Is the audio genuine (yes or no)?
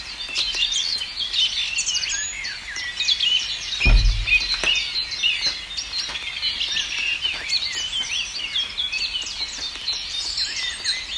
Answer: yes